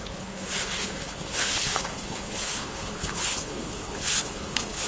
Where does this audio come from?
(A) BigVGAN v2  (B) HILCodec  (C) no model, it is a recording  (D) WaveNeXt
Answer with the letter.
B